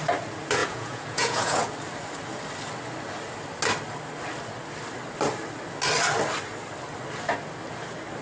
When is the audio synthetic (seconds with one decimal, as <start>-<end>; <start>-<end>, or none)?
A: 0.6-1.6